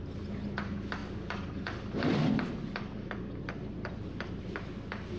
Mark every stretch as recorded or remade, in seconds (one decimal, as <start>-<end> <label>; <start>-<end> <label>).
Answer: 0.0-5.2 recorded